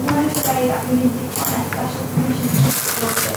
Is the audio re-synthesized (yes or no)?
no